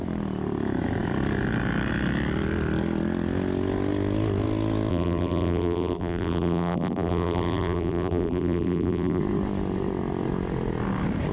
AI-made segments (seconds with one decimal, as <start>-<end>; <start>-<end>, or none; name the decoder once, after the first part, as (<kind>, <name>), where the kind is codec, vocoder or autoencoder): 4.9-9.2 (vocoder, BigVGAN v2)